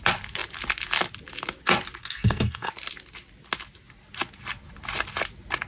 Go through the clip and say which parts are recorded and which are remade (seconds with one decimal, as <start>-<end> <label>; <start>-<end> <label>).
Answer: 0.0-2.0 recorded; 2.0-2.7 remade; 2.7-5.7 recorded